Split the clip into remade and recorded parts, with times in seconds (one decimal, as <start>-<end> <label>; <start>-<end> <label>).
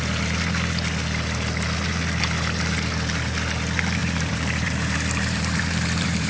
0.0-4.0 recorded; 4.0-6.3 remade